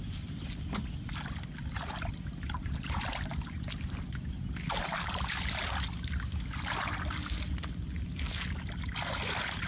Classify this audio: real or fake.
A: real